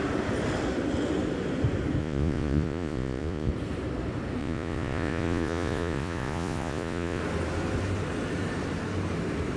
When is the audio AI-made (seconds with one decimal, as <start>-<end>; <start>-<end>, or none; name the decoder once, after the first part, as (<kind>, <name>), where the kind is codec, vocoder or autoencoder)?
2.0-3.5 (vocoder, Vocos); 4.4-7.2